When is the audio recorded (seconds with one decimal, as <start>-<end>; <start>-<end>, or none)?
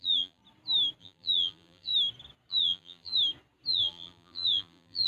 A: 0.4-1.0; 1.9-2.5; 3.1-3.7